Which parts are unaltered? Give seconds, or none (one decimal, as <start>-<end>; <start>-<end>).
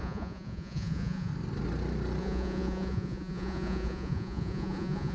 1.3-2.2